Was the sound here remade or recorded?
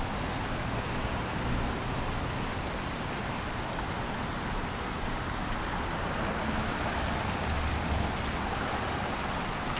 recorded